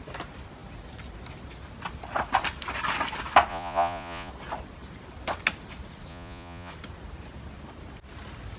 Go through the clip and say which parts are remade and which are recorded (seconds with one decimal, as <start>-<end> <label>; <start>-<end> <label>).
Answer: 0.0-3.5 recorded; 3.5-4.3 remade; 4.3-6.1 recorded; 6.1-6.7 remade; 6.7-8.6 recorded